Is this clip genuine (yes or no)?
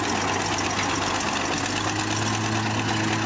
yes